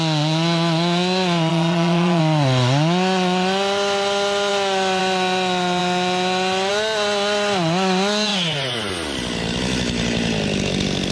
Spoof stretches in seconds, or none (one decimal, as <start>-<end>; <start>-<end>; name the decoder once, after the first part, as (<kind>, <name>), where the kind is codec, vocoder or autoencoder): 1.5-2.2 (vocoder, Vocos)